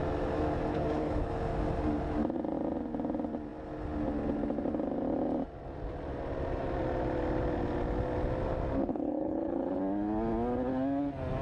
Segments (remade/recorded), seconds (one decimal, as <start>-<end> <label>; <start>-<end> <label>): 0.0-0.7 recorded; 0.7-1.3 remade; 1.3-8.9 recorded; 8.9-9.8 remade; 9.8-11.4 recorded